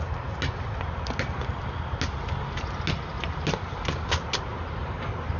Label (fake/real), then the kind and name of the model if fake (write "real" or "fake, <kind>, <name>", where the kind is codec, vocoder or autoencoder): real